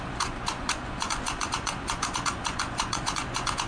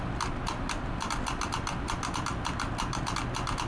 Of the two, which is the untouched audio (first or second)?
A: second